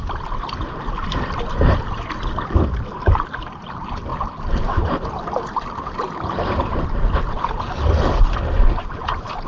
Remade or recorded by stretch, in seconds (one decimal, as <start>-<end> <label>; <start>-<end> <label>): 0.0-9.5 recorded